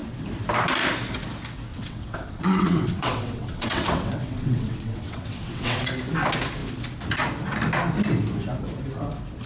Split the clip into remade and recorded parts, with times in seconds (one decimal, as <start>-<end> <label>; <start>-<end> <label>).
0.0-1.7 recorded; 1.7-5.9 remade; 5.9-9.5 recorded